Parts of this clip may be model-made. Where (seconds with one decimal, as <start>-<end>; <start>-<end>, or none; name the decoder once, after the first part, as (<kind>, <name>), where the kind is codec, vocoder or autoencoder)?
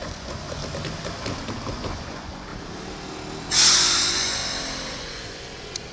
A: 0.0-0.6 (vocoder, Vocos); 1.7-2.5; 3.7-4.4; 4.9-5.9